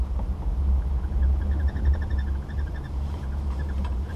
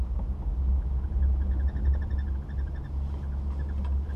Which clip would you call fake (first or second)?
first